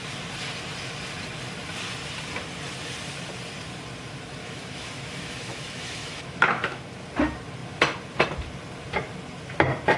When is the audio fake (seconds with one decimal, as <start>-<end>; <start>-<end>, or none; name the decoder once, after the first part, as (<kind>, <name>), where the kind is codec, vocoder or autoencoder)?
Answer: 4.4-6.8 (autoencoder, DAC-VAE)